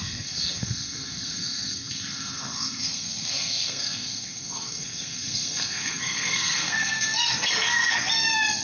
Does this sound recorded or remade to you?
remade